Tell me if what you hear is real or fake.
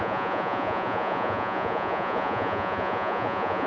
fake